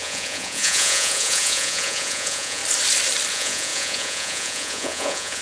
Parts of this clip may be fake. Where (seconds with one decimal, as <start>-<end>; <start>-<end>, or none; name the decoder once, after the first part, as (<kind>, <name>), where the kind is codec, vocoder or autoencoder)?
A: 0.0-2.6 (vocoder, Vocos); 3.3-5.4